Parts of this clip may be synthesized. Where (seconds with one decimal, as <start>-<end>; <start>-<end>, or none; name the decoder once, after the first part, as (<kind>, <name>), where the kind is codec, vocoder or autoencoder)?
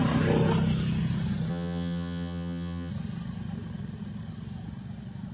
1.5-2.9 (vocoder, HiFi-GAN)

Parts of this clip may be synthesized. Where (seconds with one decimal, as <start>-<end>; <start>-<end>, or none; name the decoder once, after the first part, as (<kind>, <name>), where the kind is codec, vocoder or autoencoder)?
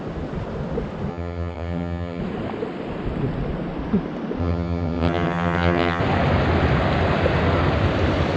1.1-2.2 (vocoder, HiFi-GAN); 4.4-6.0